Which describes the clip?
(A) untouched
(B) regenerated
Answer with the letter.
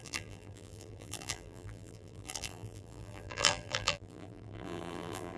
B